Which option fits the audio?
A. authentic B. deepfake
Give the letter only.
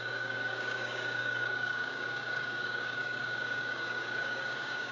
B